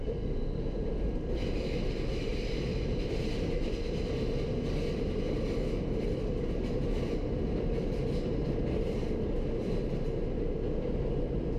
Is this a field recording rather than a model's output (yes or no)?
yes